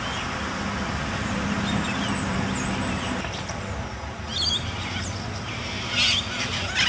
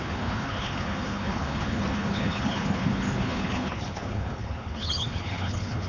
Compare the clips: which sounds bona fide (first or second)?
first